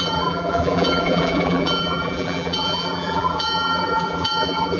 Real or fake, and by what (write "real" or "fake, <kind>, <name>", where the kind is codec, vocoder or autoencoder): fake, vocoder, BigVGAN v2